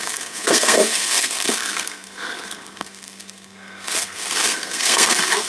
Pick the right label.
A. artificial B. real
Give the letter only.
A